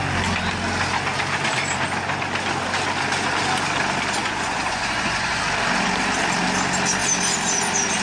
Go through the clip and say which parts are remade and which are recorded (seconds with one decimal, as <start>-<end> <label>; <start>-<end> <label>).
0.0-4.2 recorded; 4.2-5.4 remade; 5.4-8.0 recorded